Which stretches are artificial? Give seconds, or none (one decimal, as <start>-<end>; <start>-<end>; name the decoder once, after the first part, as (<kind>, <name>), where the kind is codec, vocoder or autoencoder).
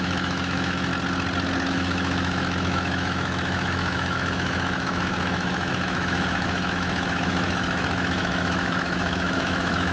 0.0-0.9 (autoencoder, DAC-VAE); 1.7-9.9